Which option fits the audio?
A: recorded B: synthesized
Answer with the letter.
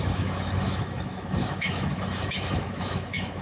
B